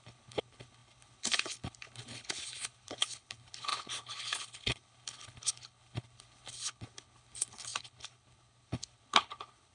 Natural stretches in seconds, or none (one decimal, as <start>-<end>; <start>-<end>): none